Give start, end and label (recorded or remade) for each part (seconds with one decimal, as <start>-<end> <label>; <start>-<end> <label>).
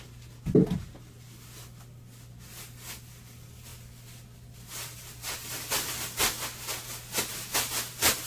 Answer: 0.0-8.3 recorded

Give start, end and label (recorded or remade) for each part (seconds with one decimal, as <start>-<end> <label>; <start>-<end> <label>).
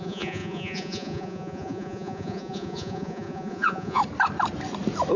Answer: 0.0-4.0 remade; 4.0-5.2 recorded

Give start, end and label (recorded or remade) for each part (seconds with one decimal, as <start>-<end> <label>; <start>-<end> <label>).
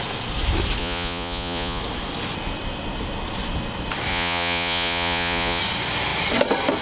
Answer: 0.0-0.8 recorded; 0.8-1.8 remade; 1.8-4.1 recorded; 4.1-5.6 remade; 5.6-6.8 recorded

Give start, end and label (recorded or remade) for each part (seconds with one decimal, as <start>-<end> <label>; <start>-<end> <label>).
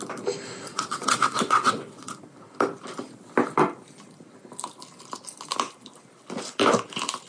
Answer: 0.0-0.7 recorded; 0.7-2.1 remade; 2.1-7.3 recorded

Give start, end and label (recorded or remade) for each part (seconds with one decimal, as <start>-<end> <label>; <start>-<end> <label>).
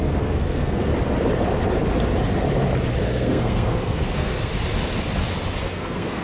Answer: 0.0-0.9 remade; 0.9-3.0 recorded; 3.0-4.5 remade; 4.5-5.5 recorded; 5.5-6.2 remade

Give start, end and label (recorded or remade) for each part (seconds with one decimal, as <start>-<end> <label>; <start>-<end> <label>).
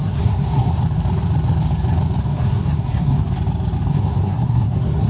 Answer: 0.0-0.8 remade; 0.8-2.2 recorded; 2.2-3.2 remade; 3.2-3.9 recorded; 3.9-5.1 remade